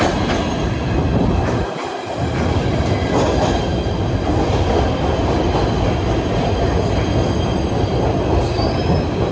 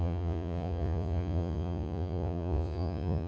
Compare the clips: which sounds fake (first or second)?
second